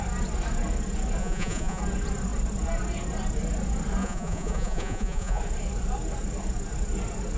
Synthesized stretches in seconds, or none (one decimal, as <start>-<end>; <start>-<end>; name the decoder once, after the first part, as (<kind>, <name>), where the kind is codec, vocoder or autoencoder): 1.2-1.8 (vocoder, Vocos); 4.0-5.4